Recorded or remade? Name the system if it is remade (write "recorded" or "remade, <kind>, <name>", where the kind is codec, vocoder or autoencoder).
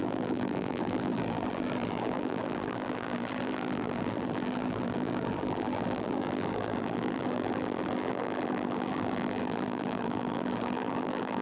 remade, vocoder, BigVGAN v2